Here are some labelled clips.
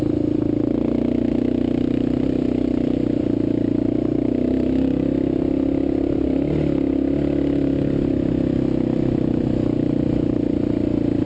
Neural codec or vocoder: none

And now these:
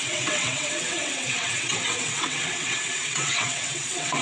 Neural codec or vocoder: vocoder, WaveNeXt